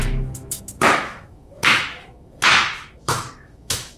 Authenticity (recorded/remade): remade